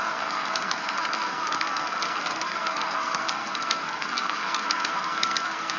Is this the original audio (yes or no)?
no